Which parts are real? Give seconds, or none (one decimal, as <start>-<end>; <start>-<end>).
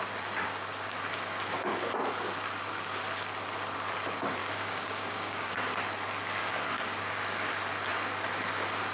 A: 0.0-4.4; 5.6-6.4; 7.5-8.9